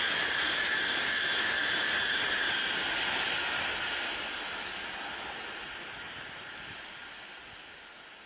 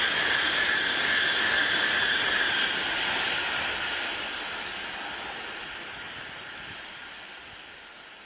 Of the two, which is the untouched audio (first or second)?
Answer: first